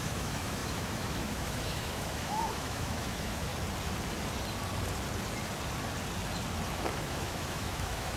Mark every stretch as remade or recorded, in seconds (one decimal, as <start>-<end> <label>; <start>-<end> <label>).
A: 0.0-3.5 remade; 3.5-6.7 recorded; 6.7-8.2 remade